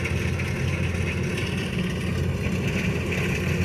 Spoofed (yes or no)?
no